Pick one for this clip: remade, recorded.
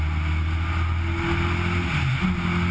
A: recorded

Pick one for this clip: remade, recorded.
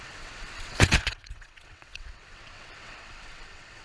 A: remade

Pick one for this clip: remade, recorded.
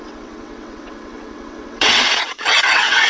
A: remade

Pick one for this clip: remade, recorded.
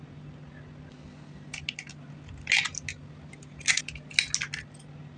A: recorded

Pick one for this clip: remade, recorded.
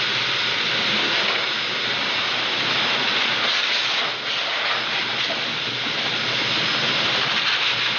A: recorded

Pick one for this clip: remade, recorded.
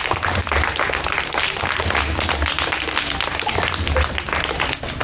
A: recorded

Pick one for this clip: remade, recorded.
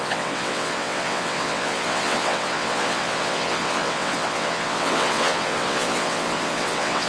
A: remade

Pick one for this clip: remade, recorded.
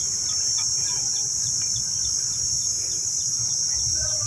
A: recorded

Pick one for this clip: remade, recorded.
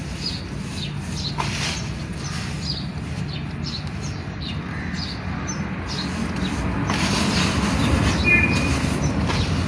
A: recorded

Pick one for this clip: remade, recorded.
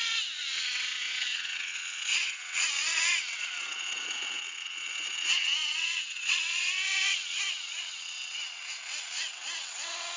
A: remade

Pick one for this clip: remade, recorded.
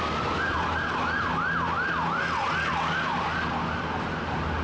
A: recorded